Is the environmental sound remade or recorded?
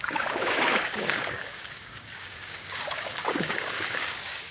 remade